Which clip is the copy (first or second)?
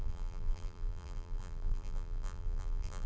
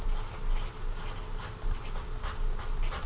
first